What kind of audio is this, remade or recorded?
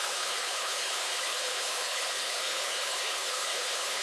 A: remade